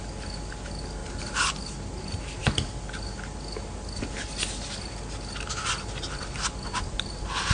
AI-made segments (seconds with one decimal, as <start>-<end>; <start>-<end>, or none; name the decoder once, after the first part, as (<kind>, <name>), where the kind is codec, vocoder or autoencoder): 1.0-1.5 (vocoder, BigVGAN v2)